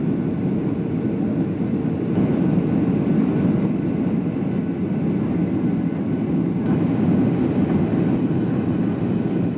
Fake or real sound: real